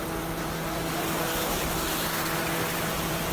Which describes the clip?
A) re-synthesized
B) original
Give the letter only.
B